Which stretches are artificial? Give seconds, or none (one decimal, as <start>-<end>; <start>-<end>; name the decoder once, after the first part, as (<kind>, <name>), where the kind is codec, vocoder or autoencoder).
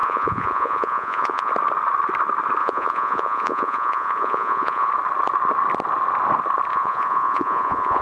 0.0-1.5 (vocoder, Vocos); 2.6-4.9; 6.7-8.0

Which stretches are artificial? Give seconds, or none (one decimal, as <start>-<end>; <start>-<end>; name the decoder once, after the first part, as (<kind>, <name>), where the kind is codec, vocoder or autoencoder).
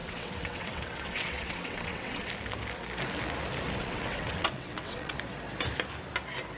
0.0-2.3 (vocoder, WaveNeXt); 3.8-5.1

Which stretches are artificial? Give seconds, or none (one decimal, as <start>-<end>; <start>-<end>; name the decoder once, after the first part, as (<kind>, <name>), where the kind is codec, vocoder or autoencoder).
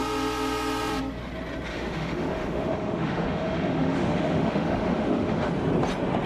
1.7-5.5 (autoencoder, DAC-VAE)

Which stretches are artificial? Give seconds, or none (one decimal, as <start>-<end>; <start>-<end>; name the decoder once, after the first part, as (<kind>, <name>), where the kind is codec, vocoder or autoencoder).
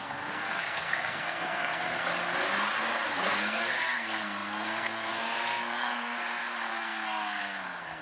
0.0-2.1 (codec, SNAC); 3.1-8.0